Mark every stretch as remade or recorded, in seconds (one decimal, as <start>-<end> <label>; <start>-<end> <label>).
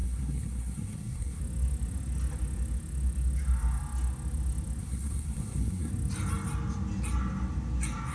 0.0-1.4 remade; 1.4-4.8 recorded; 4.8-5.9 remade; 5.9-8.1 recorded